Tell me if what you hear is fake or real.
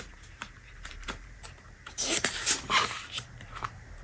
fake